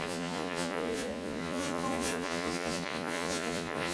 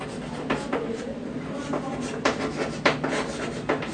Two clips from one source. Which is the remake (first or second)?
first